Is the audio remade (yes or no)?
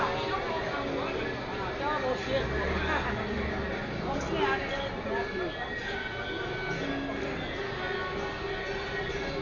no